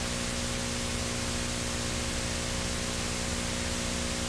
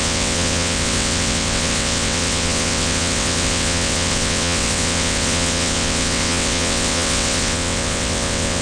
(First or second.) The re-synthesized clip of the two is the second